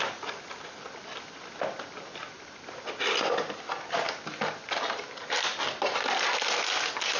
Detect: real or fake real